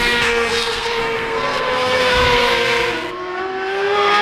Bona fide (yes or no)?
no